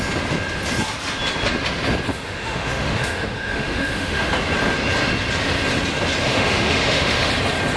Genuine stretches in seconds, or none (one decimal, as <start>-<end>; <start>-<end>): 0.0-2.1; 4.3-6.2; 7.3-7.8